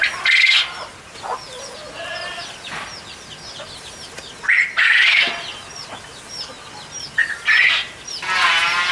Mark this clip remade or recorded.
recorded